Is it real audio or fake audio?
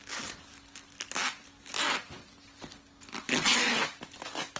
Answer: real